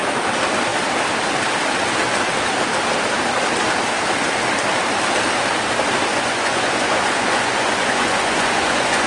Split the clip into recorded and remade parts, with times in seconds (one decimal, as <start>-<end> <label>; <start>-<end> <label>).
0.0-6.1 recorded; 6.1-9.1 remade